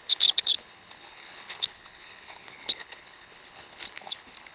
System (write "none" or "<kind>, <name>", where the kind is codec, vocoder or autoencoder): codec, HILCodec